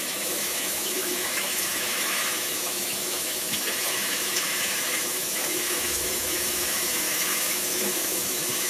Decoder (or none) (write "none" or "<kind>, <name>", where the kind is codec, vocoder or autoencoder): autoencoder, DAC-VAE